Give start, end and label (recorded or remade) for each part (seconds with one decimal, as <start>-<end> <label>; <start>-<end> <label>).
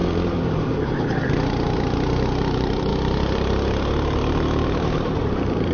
0.0-5.7 remade